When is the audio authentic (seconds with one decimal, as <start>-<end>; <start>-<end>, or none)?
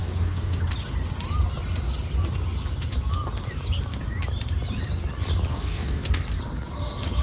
0.6-5.5; 6.1-7.2